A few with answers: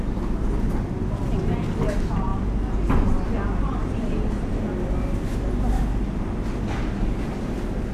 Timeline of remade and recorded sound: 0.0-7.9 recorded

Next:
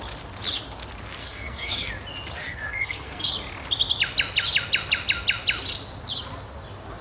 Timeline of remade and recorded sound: 0.0-1.2 recorded; 1.2-1.9 remade; 1.9-2.4 recorded; 2.4-3.3 remade; 3.3-7.0 recorded

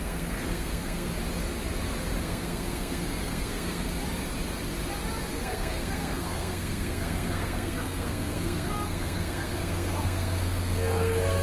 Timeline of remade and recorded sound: 0.0-1.1 remade; 1.1-2.2 recorded; 2.2-3.9 remade; 3.9-5.3 recorded; 5.3-11.4 remade

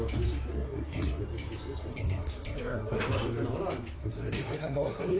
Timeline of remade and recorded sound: 0.0-0.5 recorded; 0.5-1.2 remade; 1.2-1.9 recorded; 1.9-3.0 remade; 3.0-4.0 recorded; 4.0-5.2 remade

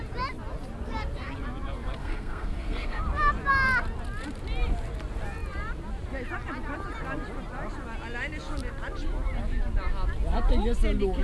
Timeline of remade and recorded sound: 0.0-2.0 recorded; 2.0-3.0 remade; 3.0-11.2 recorded

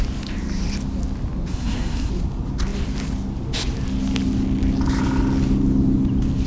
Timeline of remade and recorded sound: 0.0-1.5 recorded; 1.5-2.1 remade; 2.1-6.5 recorded